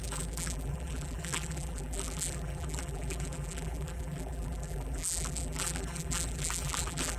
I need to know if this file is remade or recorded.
remade